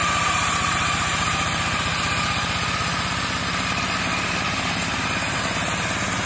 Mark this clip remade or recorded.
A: recorded